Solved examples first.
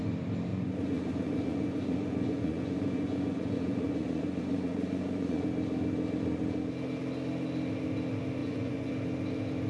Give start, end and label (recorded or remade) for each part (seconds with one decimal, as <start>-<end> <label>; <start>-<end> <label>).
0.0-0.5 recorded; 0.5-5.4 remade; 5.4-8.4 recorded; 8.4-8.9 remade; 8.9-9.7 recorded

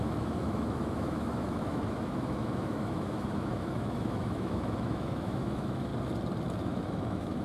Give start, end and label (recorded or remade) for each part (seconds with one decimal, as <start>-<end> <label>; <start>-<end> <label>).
0.0-5.9 remade; 5.9-6.6 recorded; 6.6-7.4 remade

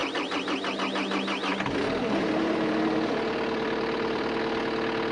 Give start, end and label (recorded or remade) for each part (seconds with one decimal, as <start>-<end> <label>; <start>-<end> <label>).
0.0-1.5 recorded; 1.5-4.4 remade; 4.4-5.1 recorded

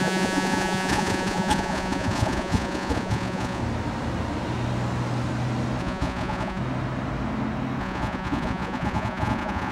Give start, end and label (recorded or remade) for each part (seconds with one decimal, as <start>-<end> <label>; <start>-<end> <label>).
0.0-3.6 remade; 3.6-5.8 recorded; 5.8-6.6 remade; 6.6-7.8 recorded; 7.8-9.7 remade

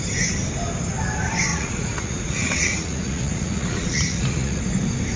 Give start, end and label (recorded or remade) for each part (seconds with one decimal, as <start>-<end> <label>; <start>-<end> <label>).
0.0-1.5 recorded; 1.5-4.6 remade; 4.6-5.2 recorded